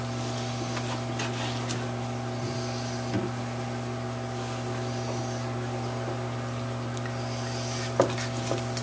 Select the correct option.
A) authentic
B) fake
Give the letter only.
A